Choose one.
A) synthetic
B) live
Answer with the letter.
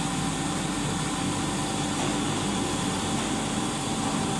B